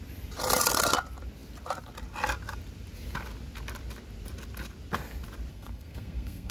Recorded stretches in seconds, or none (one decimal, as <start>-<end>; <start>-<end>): 0.0-5.5